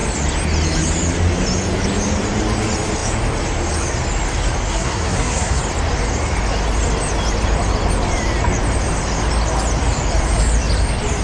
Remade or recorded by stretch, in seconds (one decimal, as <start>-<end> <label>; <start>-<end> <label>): 0.0-4.7 recorded; 4.7-5.6 remade; 5.6-11.2 recorded